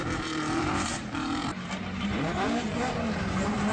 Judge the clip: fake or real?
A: fake